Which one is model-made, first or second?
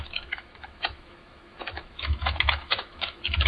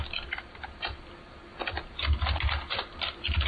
first